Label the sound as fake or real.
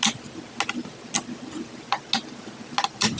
real